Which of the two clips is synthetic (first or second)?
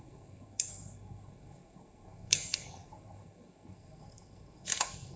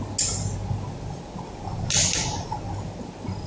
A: first